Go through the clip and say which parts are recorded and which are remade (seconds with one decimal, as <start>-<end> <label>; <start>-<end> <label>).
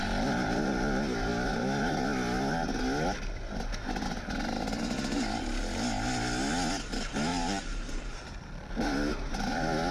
0.0-7.3 recorded; 7.3-8.7 remade; 8.7-9.9 recorded